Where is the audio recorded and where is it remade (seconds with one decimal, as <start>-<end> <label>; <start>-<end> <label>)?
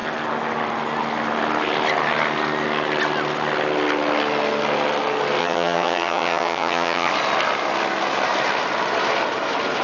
0.0-5.4 recorded; 5.4-7.1 remade; 7.1-9.8 recorded